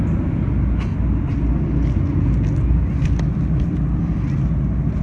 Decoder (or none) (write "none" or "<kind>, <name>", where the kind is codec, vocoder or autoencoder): none